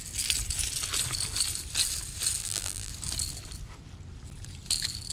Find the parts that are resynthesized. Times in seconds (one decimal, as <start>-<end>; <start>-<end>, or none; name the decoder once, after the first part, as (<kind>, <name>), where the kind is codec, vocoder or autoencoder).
2.4-2.9 (vocoder, BigVGAN v2)